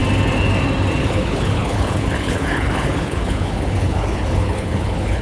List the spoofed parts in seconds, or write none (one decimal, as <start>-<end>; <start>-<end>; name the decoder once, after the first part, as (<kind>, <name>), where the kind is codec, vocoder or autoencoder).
1.0-5.2 (codec, HILCodec)